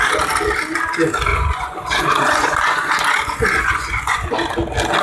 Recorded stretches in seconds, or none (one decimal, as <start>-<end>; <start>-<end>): 0.0-1.3; 4.3-5.0